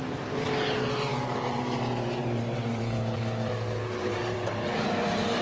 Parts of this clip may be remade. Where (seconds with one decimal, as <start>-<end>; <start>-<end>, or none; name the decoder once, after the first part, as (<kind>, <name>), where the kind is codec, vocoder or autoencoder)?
1.1-3.2 (vocoder, BigVGAN v2); 4.0-5.4